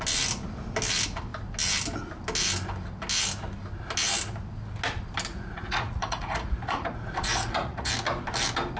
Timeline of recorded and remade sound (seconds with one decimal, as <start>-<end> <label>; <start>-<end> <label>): 0.0-5.3 recorded; 5.3-7.9 remade; 7.9-8.8 recorded